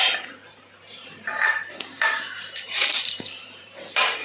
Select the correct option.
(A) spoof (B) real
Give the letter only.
A